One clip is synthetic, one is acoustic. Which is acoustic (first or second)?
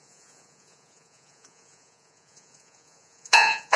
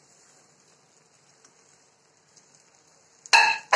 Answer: second